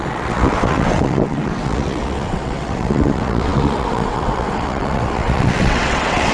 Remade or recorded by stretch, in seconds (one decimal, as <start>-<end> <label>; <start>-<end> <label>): 0.0-6.3 remade